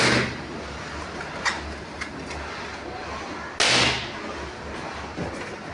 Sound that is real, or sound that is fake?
real